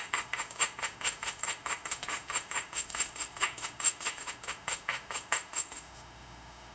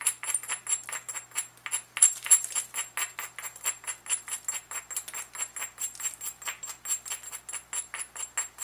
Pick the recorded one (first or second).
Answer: second